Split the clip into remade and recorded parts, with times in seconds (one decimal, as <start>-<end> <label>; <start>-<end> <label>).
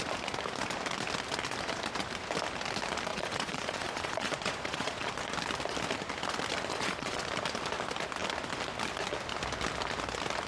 0.0-3.1 recorded; 3.1-5.1 remade; 5.1-6.7 recorded; 6.7-7.2 remade; 7.2-10.5 recorded